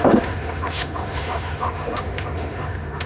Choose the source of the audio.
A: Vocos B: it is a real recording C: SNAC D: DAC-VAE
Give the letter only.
D